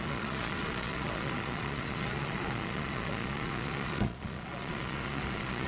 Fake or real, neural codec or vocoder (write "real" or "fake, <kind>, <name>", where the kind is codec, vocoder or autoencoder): fake, vocoder, Vocos